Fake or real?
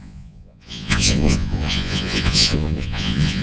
fake